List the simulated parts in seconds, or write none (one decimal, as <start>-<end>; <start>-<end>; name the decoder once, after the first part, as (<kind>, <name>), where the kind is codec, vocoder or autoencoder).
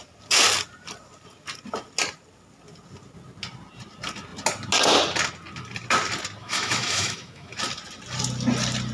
6.4-7.5 (autoencoder, DAC-VAE)